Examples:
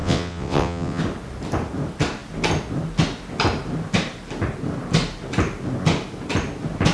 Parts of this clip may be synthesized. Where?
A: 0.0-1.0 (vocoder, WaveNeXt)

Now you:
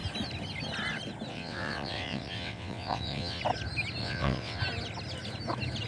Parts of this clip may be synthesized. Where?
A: 1.3-3.4 (vocoder, WaveNeXt); 4.0-4.6

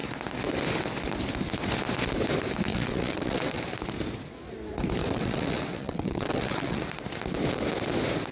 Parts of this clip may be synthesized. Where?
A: 2.7-3.6 (vocoder, WaveNeXt); 5.0-6.8

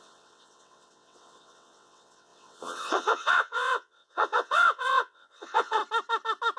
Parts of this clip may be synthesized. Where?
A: 0.0-5.8 (vocoder, WaveNeXt)

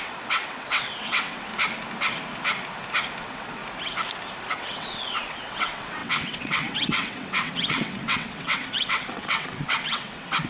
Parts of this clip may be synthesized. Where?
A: 0.0-1.5 (vocoder, WaveNeXt); 3.2-3.6; 4.5-10.5